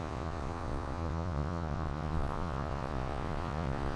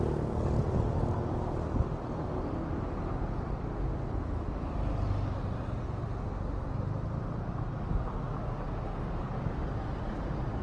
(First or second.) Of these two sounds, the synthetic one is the first